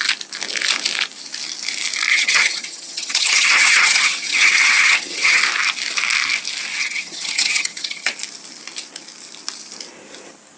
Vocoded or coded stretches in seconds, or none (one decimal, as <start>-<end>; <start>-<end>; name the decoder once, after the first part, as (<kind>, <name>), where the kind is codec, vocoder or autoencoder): 2.1-5.4 (vocoder, HiFi-GAN); 6.7-8.1